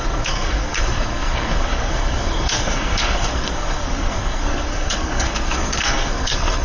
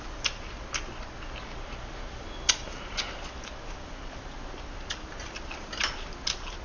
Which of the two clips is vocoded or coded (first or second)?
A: first